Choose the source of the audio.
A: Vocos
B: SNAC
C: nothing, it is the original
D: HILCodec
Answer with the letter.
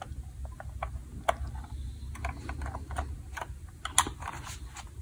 C